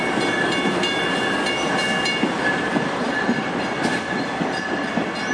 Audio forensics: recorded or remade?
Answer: recorded